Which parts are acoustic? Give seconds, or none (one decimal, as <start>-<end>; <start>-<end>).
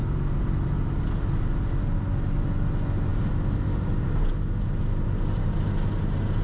0.0-6.4